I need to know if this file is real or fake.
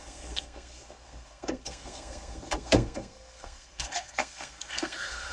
fake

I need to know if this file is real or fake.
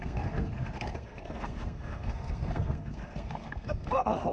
fake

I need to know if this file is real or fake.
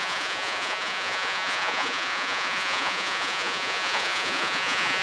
fake